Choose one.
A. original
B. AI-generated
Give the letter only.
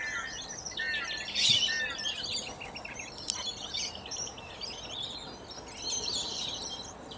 A